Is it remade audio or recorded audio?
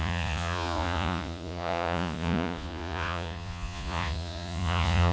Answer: remade